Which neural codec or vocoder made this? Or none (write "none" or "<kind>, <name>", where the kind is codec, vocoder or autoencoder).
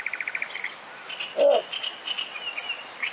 none